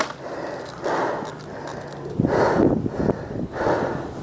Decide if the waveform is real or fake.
real